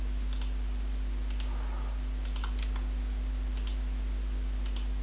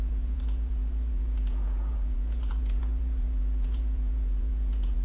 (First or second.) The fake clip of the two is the second